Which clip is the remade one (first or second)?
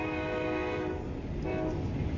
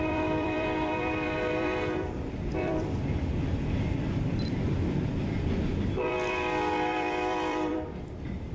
second